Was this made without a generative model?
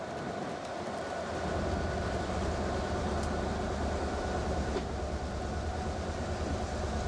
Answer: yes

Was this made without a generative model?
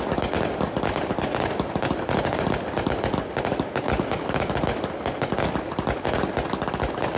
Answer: yes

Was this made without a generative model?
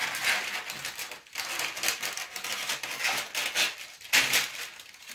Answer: yes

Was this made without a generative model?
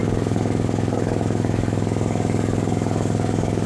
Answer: no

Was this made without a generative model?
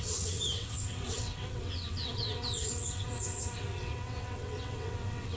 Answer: no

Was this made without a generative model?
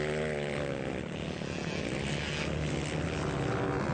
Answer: yes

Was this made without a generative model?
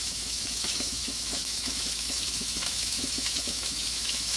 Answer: no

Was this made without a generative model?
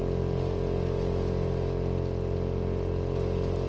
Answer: yes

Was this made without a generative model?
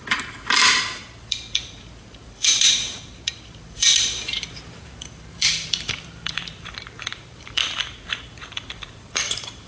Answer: no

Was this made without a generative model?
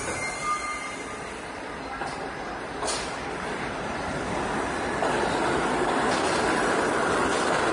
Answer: yes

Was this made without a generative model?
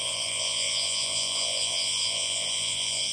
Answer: no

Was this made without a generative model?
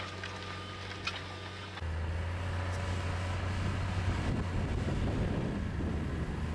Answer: yes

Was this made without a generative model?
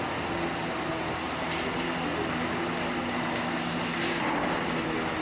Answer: yes